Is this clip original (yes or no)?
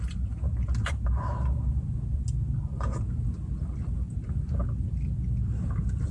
yes